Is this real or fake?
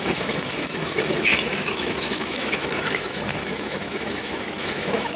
fake